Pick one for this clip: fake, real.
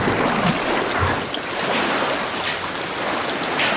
real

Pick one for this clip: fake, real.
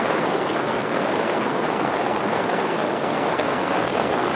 fake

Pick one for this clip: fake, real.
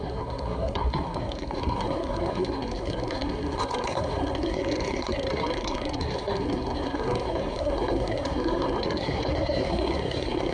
fake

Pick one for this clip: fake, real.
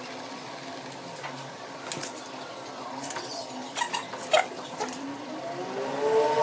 real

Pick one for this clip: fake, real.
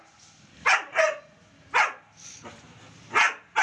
real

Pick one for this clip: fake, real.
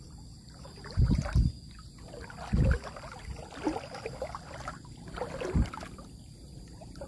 real